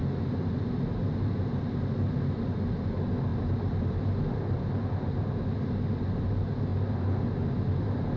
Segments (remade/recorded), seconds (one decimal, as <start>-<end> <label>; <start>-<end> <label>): 0.0-8.2 recorded

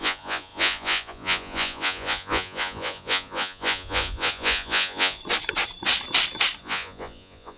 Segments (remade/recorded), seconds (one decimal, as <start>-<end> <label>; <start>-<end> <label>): 0.0-5.2 remade; 5.2-6.6 recorded; 6.6-7.6 remade

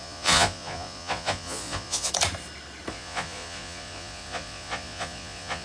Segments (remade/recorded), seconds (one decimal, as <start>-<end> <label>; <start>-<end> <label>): 0.0-2.1 remade; 2.1-2.9 recorded; 2.9-5.6 remade

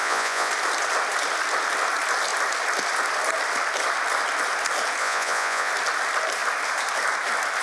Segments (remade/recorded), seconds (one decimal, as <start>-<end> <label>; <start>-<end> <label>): 0.0-0.5 remade; 0.5-5.0 recorded; 5.0-5.7 remade; 5.7-7.6 recorded

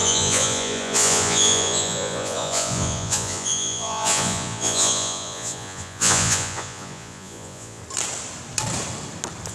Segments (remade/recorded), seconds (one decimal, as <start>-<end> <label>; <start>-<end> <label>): 0.0-7.8 remade; 7.8-9.5 recorded